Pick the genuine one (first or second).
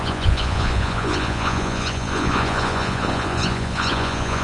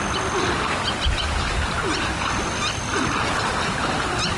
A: second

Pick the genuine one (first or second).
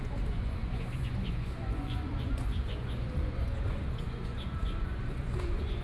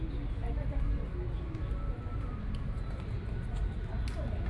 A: second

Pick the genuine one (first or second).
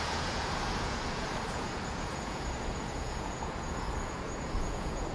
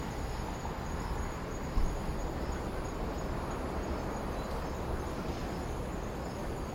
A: second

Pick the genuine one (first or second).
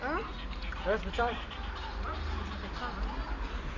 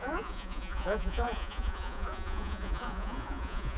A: first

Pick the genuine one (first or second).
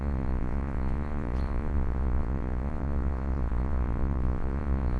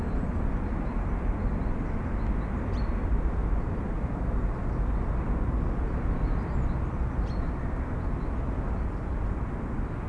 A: second